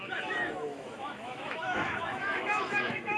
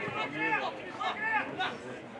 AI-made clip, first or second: first